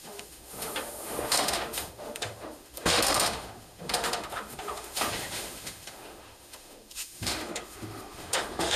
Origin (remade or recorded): remade